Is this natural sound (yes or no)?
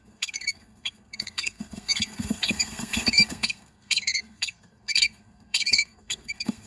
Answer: no